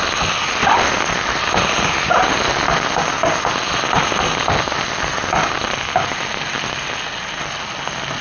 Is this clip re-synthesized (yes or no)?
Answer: no